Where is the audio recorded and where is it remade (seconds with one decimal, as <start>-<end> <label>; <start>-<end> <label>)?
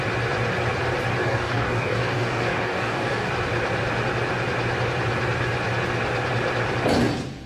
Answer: 0.0-1.2 recorded; 1.2-3.3 remade; 3.3-7.5 recorded